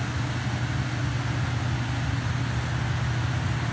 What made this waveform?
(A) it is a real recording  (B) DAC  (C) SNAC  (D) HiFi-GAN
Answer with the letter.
A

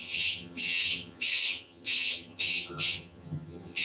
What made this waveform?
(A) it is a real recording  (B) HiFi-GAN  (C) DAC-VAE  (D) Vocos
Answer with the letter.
B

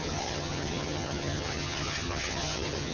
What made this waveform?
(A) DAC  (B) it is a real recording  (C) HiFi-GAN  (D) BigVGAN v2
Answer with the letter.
C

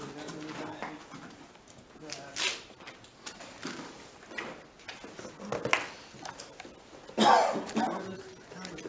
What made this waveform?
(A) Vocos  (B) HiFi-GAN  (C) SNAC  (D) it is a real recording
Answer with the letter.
D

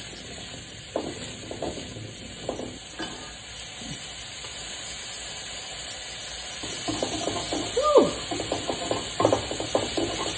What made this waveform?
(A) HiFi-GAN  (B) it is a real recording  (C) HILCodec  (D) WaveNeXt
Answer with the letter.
B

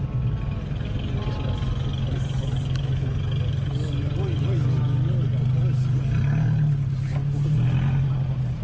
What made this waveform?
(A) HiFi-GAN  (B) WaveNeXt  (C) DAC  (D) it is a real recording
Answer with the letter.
D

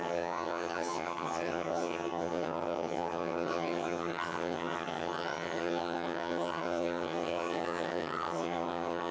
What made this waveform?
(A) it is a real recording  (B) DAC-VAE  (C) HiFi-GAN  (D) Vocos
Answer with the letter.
C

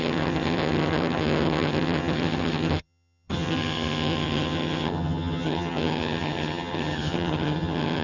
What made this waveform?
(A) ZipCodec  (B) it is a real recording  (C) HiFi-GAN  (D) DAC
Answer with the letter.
C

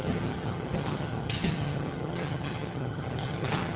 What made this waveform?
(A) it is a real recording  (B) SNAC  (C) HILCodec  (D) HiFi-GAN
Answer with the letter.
D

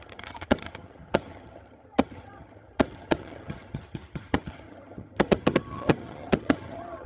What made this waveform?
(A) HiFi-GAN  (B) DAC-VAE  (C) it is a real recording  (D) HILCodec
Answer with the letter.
A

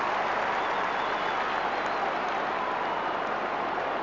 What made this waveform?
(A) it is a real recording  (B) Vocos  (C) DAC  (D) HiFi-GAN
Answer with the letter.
A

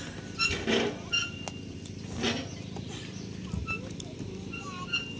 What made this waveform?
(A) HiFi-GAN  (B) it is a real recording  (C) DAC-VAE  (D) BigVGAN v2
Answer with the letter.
B